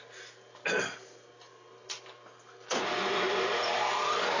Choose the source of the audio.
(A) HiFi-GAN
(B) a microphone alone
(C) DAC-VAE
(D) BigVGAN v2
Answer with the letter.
B